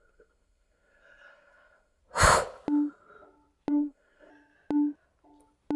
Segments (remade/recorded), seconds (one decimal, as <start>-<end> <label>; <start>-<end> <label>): 0.0-2.0 remade; 2.0-3.7 recorded; 3.7-4.3 remade; 4.3-5.8 recorded